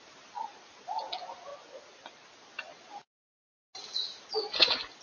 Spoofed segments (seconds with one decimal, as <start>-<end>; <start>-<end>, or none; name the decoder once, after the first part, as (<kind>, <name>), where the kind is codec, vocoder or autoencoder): none